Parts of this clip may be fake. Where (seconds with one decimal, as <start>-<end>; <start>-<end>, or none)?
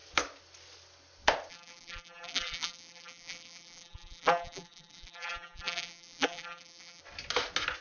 1.5-7.0